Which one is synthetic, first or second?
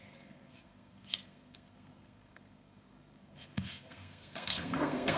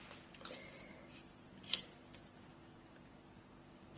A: first